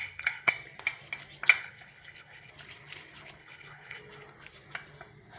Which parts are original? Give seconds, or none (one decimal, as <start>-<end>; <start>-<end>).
0.5-1.6; 2.5-3.4; 4.0-5.4